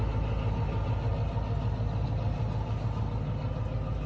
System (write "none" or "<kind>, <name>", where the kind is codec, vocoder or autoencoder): none